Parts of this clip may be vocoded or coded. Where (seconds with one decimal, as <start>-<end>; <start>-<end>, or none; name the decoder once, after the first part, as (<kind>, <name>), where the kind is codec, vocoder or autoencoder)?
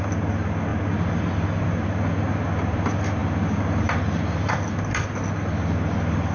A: none